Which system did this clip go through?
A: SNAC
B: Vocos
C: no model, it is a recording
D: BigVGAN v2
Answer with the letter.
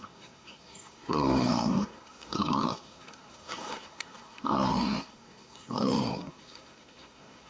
A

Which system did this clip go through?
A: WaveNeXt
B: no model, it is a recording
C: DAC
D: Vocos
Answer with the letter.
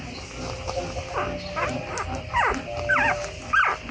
B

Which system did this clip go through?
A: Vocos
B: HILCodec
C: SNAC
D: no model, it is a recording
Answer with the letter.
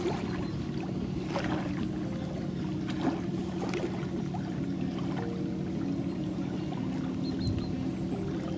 D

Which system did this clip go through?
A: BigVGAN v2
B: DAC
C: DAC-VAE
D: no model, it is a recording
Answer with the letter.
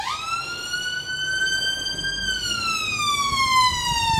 D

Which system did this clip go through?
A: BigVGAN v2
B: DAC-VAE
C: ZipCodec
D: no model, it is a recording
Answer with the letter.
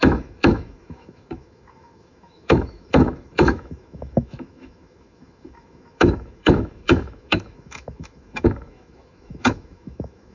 B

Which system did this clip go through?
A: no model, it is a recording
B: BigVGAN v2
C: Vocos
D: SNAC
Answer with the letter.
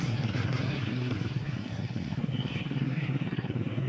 D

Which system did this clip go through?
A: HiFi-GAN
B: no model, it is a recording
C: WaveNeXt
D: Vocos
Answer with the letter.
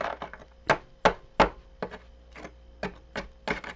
B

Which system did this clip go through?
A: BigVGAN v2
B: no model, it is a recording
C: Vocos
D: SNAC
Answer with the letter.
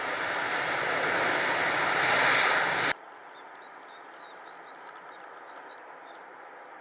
B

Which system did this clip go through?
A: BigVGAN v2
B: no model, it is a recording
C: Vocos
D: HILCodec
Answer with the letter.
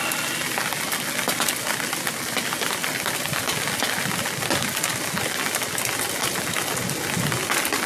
B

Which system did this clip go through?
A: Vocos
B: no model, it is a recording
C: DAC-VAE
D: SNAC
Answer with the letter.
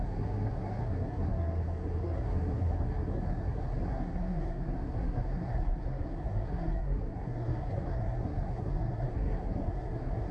D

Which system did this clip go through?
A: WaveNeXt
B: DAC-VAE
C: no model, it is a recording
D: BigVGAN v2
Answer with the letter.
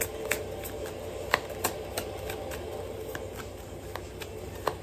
C